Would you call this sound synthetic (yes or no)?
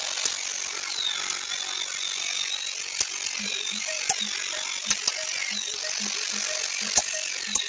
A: yes